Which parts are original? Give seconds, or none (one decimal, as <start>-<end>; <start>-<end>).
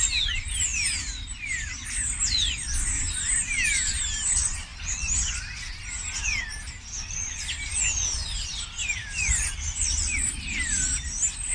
0.0-11.5